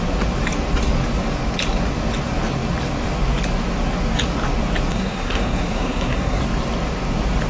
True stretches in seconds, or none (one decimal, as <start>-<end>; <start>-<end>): 0.0-4.9; 6.4-7.5